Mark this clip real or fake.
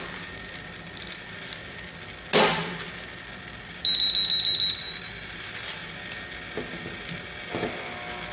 real